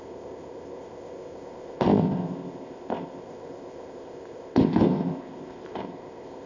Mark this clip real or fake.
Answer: fake